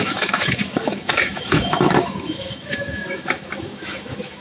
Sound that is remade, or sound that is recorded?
remade